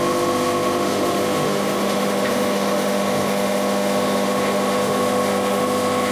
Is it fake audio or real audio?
fake